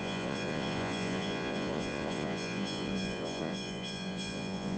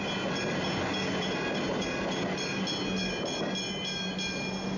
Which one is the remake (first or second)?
first